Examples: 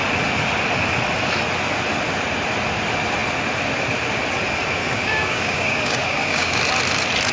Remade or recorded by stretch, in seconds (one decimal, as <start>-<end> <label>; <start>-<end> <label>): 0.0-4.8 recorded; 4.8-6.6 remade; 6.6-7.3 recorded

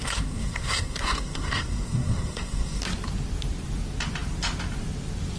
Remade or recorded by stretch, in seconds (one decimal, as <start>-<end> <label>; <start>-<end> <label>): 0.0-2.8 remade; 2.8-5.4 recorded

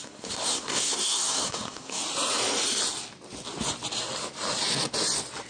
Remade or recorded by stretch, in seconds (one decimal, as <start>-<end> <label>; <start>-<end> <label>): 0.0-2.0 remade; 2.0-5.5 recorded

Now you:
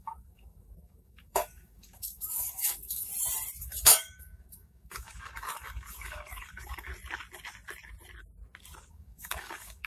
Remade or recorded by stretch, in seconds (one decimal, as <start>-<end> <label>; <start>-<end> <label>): 0.0-3.1 remade; 3.1-3.6 recorded; 3.6-6.9 remade; 6.9-8.9 recorded; 8.9-9.9 remade

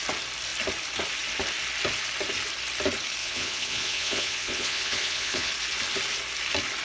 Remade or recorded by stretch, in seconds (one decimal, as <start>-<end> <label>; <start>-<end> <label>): 0.0-3.2 recorded; 3.2-5.5 remade; 5.5-6.8 recorded

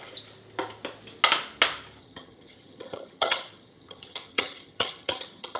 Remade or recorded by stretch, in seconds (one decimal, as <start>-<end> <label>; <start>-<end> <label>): 0.0-2.0 recorded; 2.0-5.6 remade